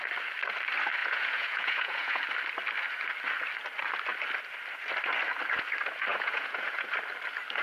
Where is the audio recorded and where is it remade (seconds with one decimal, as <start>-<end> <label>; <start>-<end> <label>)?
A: 0.0-1.0 recorded; 1.0-2.2 remade; 2.2-6.1 recorded; 6.1-6.9 remade; 6.9-7.6 recorded